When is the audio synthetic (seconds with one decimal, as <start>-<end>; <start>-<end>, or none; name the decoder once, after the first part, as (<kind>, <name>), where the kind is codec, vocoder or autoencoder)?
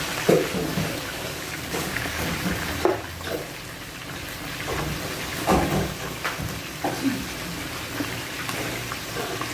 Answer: 0.7-2.5 (codec, DAC); 5.3-6.4